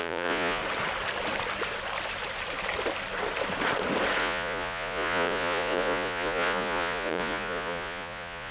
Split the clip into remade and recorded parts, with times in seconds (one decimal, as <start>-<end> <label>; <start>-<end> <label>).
0.0-0.6 remade; 0.6-4.2 recorded; 4.2-8.5 remade